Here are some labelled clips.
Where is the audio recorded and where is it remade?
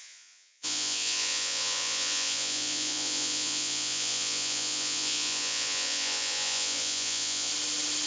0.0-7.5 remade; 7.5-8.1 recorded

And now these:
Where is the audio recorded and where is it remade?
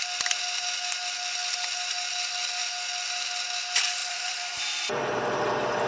0.0-4.0 recorded; 4.0-4.9 remade; 4.9-5.9 recorded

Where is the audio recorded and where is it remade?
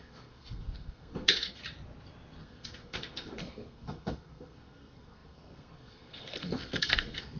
0.0-1.6 remade; 1.6-2.4 recorded; 2.4-7.4 remade